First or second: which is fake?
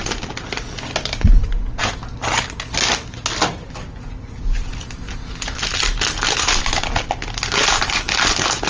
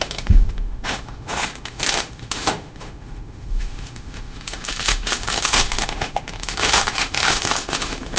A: second